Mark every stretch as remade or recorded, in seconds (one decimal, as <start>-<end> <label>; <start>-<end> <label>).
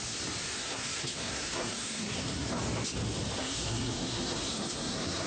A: 0.0-0.6 recorded; 0.6-2.5 remade; 2.5-3.4 recorded; 3.4-5.3 remade